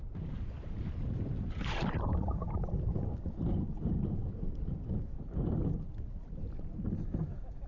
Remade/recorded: recorded